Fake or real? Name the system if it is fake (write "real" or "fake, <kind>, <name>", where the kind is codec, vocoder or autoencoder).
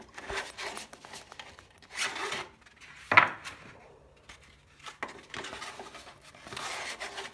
real